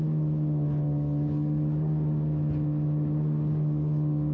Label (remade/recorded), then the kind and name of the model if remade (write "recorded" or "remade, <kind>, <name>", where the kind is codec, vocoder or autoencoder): recorded